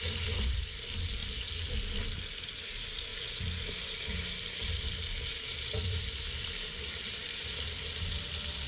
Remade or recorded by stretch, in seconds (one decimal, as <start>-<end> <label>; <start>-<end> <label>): 0.0-1.2 remade; 1.2-2.1 recorded; 2.1-3.1 remade; 3.1-5.3 recorded; 5.3-8.7 remade